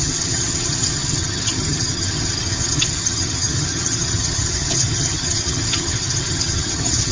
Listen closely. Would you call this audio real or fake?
fake